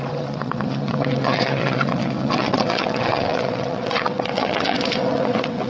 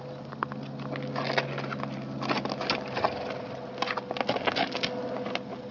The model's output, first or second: first